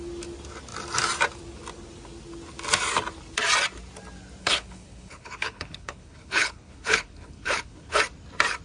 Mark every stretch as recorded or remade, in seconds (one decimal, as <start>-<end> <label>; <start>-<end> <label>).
0.0-4.4 recorded; 4.4-8.0 remade; 8.0-8.6 recorded